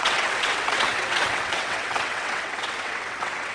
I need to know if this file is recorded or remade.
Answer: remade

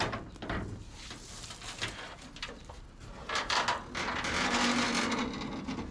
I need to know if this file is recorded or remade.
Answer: recorded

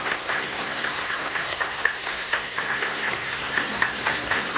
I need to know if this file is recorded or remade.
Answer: remade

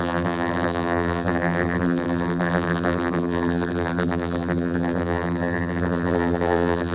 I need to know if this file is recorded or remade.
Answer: remade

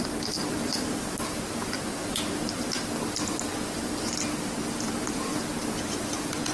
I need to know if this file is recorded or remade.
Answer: recorded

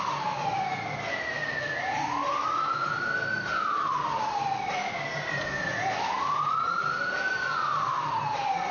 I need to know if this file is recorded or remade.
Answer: recorded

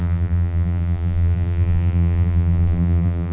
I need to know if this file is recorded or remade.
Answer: remade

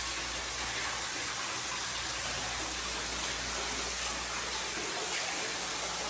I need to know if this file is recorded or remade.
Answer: recorded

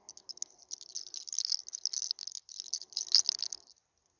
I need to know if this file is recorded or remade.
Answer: recorded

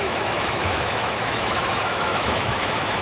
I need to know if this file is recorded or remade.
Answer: remade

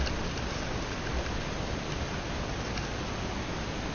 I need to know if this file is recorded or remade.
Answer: recorded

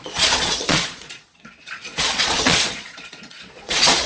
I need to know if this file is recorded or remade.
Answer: remade